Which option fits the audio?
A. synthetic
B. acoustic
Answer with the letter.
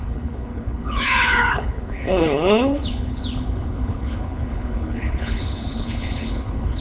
A